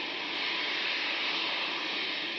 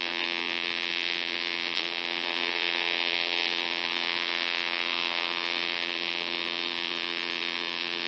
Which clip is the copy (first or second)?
second